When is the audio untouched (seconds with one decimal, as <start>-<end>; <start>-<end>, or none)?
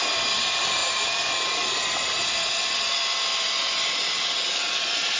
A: 0.0-5.2